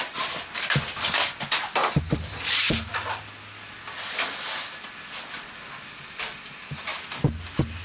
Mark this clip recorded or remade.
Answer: recorded